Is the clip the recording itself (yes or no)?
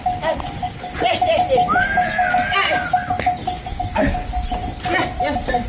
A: yes